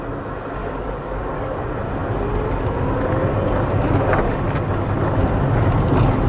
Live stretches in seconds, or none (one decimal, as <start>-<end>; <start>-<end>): 0.0-0.6; 1.6-6.3